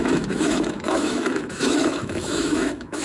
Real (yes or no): no